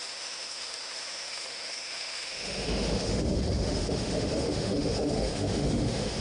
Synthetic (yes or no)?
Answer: yes